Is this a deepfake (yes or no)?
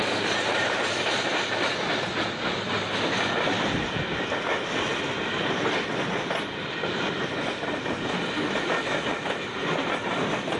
no